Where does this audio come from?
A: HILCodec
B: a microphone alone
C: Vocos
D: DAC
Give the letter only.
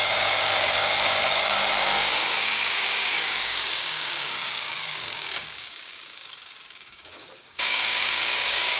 D